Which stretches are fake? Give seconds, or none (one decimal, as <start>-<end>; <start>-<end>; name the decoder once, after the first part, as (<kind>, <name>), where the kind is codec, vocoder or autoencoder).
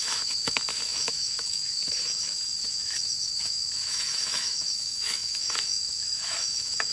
0.0-6.9 (autoencoder, DAC-VAE)